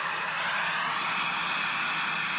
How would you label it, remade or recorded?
recorded